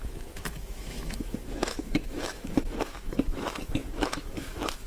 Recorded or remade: remade